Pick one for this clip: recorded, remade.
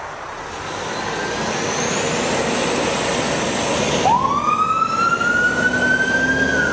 recorded